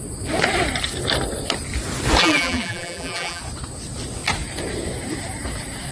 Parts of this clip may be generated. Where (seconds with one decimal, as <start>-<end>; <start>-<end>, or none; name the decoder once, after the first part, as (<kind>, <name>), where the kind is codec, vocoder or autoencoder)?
2.2-3.4 (vocoder, BigVGAN v2)